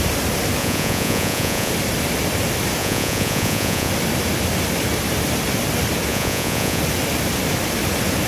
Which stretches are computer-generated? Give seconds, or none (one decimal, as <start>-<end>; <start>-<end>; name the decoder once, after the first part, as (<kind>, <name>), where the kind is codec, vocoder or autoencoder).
0.6-1.7 (vocoder, Vocos); 2.8-3.9; 6.1-6.8